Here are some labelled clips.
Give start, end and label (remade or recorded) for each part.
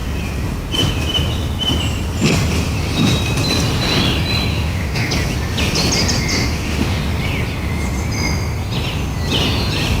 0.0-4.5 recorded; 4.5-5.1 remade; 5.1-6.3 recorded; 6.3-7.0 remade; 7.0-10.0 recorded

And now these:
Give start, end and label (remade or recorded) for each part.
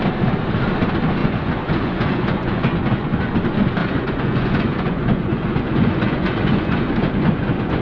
0.0-1.2 recorded; 1.2-3.3 remade; 3.3-3.8 recorded; 3.8-7.8 remade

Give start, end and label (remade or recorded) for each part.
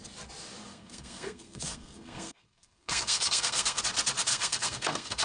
0.0-0.7 recorded; 0.7-3.8 remade; 3.8-4.3 recorded; 4.3-5.2 remade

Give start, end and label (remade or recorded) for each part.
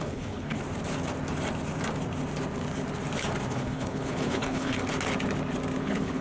0.0-0.6 remade; 0.6-3.5 recorded; 3.5-4.8 remade; 4.8-5.8 recorded; 5.8-6.2 remade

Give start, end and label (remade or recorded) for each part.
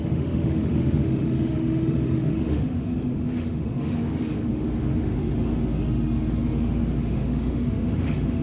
0.0-8.4 remade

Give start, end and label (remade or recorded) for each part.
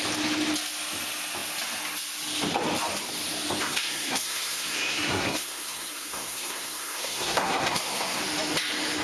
0.0-3.6 recorded; 3.6-8.2 remade; 8.2-9.0 recorded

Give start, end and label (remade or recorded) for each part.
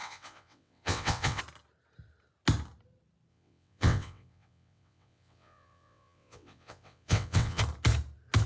0.0-1.4 remade; 1.4-3.3 recorded; 3.3-7.6 remade; 7.6-8.5 recorded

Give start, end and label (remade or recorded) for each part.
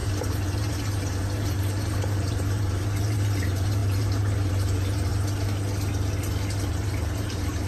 0.0-5.1 remade; 5.1-6.7 recorded; 6.7-7.7 remade